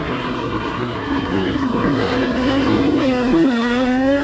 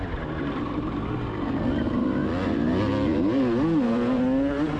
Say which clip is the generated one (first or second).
first